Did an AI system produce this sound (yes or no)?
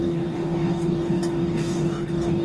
yes